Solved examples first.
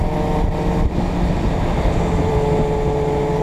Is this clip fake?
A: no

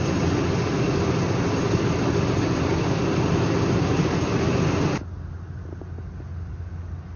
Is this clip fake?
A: no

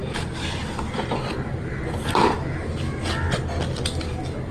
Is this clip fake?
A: no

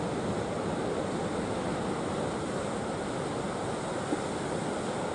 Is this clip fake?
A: no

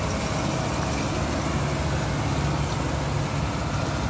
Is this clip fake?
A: no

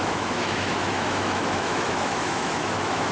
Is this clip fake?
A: yes